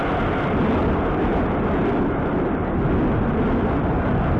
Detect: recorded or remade recorded